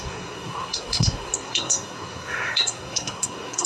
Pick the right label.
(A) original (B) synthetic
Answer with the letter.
B